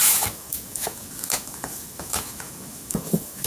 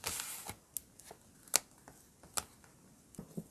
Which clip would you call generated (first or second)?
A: first